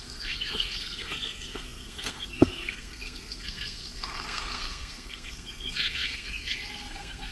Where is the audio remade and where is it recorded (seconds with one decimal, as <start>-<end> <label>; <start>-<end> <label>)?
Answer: 0.0-7.3 remade